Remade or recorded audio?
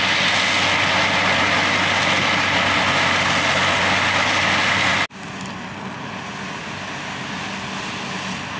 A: recorded